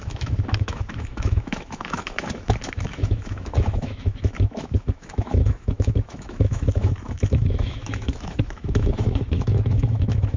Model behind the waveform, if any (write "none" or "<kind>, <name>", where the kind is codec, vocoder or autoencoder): autoencoder, DAC-VAE